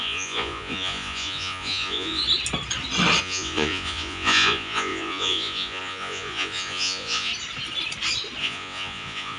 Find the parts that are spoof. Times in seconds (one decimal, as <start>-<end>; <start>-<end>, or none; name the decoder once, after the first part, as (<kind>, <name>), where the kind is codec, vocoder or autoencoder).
0.0-2.2 (vocoder, Vocos); 3.2-7.3; 8.4-9.4